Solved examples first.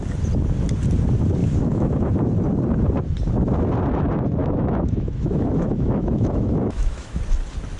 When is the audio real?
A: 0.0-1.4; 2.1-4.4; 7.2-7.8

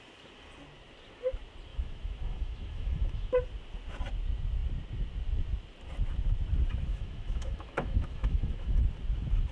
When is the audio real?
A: 0.0-1.7; 3.3-6.9; 8.8-9.5

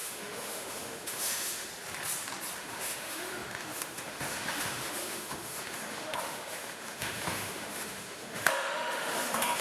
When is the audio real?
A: 1.7-2.6